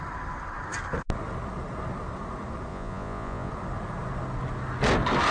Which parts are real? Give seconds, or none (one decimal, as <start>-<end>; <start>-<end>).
0.0-2.7; 3.5-5.3